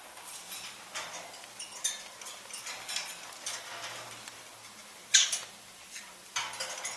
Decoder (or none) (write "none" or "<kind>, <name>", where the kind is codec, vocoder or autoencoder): none